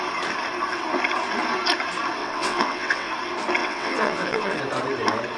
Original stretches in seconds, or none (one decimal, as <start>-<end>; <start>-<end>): 0.0-2.2; 3.1-3.6; 4.6-5.4